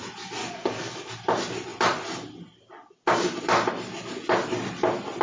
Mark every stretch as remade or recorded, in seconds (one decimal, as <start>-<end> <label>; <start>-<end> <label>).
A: 0.0-0.4 recorded; 0.4-1.1 remade; 1.1-5.2 recorded